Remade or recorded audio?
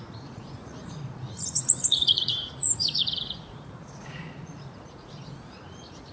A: remade